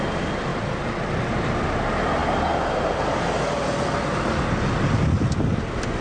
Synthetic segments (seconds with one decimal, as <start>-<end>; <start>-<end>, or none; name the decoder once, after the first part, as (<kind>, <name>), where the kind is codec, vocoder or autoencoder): none